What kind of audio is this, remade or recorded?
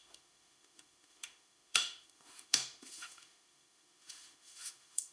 remade